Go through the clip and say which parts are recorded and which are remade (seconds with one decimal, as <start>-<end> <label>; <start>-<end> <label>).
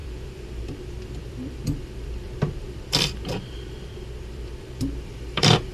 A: 0.0-5.7 remade